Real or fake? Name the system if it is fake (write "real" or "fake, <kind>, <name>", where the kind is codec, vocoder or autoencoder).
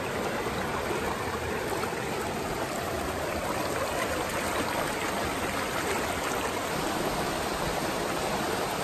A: real